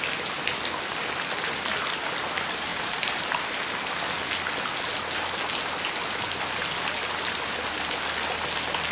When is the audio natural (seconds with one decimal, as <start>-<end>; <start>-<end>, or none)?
0.0-2.7; 3.3-8.9